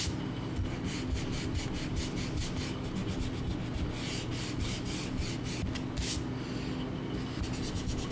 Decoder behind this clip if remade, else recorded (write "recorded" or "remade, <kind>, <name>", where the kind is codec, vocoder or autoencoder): recorded